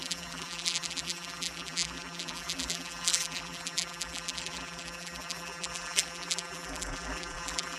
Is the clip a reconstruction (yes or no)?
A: yes